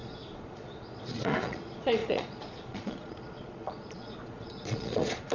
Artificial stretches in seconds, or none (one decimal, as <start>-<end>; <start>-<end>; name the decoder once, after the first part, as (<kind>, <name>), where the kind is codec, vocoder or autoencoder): 0.0-5.3 (vocoder, Vocos)